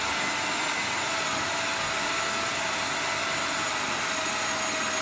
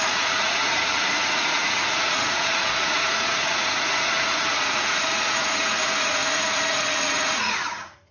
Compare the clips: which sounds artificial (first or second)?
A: second